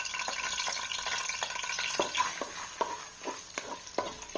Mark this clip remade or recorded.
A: recorded